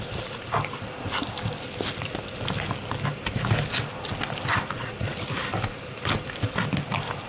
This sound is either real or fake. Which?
real